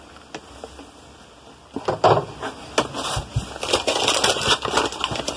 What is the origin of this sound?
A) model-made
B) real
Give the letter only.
B